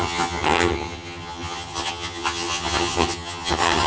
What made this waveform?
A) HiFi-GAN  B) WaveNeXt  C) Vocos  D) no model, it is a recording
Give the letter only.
A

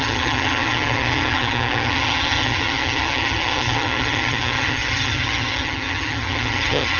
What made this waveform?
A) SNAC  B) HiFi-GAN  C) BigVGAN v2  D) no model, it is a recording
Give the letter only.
B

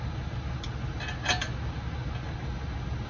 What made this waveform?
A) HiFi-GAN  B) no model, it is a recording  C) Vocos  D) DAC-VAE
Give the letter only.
B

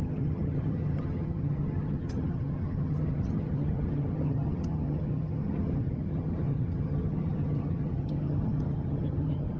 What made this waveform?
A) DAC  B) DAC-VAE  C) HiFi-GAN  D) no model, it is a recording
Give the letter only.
C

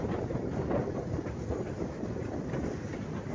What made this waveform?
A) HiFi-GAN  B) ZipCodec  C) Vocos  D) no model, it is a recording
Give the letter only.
D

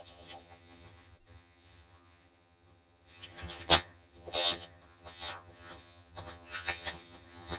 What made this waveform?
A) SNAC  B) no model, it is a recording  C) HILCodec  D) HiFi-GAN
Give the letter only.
D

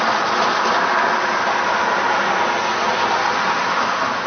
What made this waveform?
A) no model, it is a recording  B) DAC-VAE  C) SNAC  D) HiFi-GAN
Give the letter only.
A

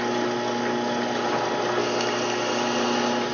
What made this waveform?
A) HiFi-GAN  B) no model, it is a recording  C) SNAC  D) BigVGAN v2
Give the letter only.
B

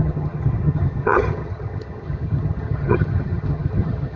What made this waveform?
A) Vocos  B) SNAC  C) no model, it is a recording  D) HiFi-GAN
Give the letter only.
D